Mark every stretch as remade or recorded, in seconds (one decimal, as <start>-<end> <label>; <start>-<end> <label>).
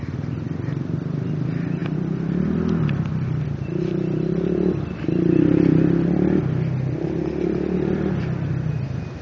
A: 0.0-9.2 recorded